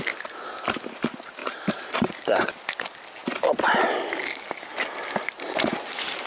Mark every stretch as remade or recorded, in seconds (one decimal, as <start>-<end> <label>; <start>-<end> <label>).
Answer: 0.0-1.4 recorded; 1.4-2.5 remade; 2.5-6.3 recorded